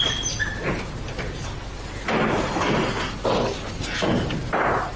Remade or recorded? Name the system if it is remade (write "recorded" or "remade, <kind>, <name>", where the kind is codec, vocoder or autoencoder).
recorded